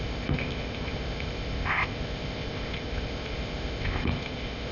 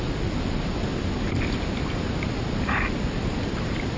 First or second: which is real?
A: second